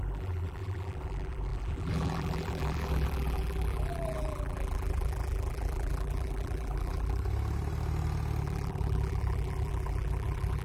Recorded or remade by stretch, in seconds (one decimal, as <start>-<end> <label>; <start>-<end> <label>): 0.0-7.3 remade; 7.3-8.4 recorded; 8.4-10.6 remade